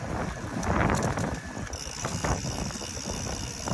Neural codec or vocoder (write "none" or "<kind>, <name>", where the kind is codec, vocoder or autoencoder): none